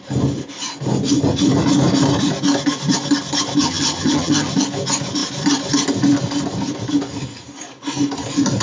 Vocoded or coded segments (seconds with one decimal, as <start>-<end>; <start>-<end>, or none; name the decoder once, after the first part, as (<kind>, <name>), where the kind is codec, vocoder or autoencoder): 3.6-4.5 (vocoder, HiFi-GAN)